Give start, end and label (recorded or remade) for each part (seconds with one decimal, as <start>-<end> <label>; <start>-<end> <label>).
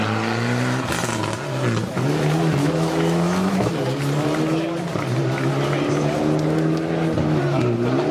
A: 0.0-2.6 recorded; 2.6-3.7 remade; 3.7-8.1 recorded